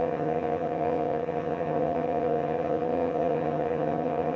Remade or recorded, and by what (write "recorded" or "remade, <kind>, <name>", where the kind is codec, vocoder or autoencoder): remade, vocoder, HiFi-GAN